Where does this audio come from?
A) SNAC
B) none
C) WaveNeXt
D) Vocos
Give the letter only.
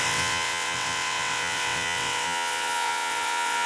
C